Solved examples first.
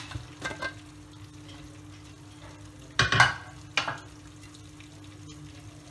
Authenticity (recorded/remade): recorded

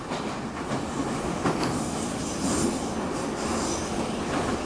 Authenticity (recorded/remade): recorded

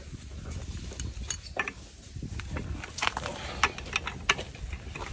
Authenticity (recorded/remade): recorded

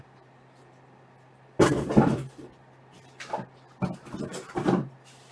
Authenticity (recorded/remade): remade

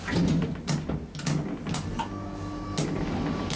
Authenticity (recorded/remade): recorded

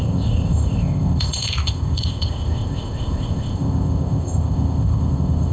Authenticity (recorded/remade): remade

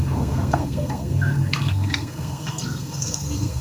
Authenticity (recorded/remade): remade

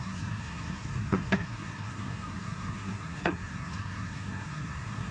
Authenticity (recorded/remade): remade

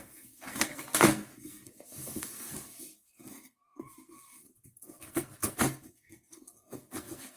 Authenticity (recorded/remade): remade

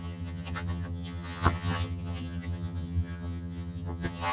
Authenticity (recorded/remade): remade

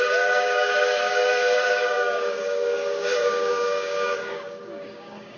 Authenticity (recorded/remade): remade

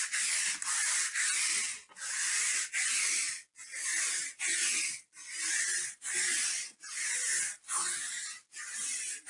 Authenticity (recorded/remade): recorded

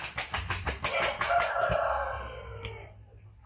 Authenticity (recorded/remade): recorded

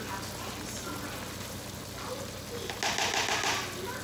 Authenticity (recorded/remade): recorded